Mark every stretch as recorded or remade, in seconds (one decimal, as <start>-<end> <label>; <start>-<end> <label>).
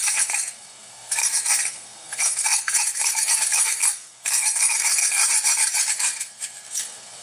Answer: 0.0-5.2 remade; 5.2-5.9 recorded; 5.9-7.2 remade